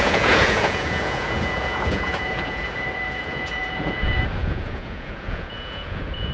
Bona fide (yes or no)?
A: no